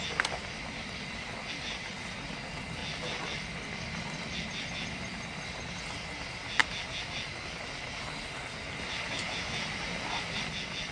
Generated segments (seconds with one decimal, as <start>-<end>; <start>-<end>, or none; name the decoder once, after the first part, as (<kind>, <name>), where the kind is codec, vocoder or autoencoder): none